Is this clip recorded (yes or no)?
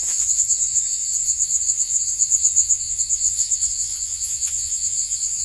no